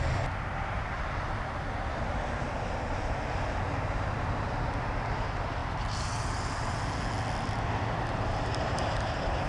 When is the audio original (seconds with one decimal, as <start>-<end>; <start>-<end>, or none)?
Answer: 0.0-9.5